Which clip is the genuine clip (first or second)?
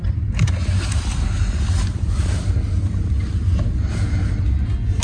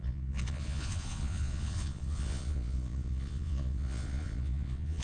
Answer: first